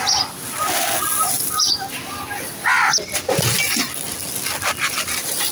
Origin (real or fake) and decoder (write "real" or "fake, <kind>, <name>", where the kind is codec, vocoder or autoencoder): real